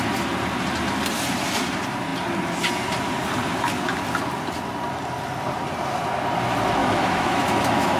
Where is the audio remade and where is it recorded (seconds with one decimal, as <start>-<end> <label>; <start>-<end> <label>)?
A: 0.0-6.8 recorded; 6.8-8.0 remade